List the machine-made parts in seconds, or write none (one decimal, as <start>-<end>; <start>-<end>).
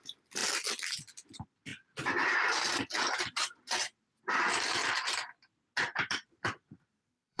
0.0-1.7; 6.1-7.4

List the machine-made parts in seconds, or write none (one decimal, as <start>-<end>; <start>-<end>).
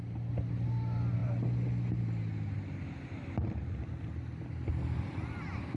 none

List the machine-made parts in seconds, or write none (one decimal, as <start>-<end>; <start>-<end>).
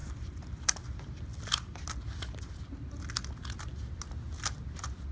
0.0-1.2; 1.7-2.8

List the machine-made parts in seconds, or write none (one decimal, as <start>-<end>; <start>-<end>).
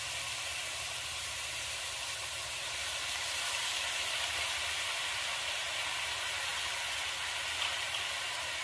none